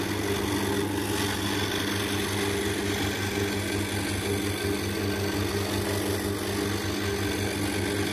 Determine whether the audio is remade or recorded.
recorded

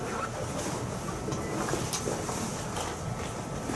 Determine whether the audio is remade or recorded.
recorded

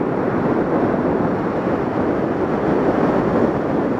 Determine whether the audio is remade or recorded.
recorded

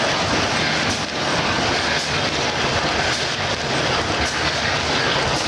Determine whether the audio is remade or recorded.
recorded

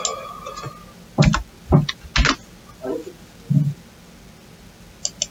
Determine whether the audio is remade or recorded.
recorded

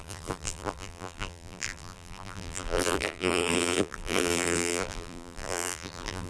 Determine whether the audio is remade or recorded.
remade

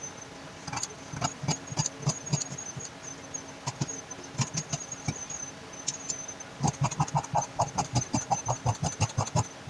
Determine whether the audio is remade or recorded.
recorded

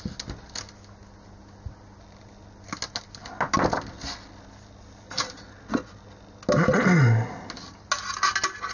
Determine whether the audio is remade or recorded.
recorded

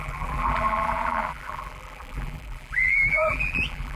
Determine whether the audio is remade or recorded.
remade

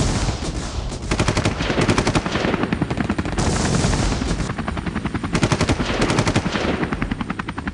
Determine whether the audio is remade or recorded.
remade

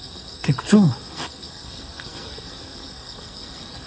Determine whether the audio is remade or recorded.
remade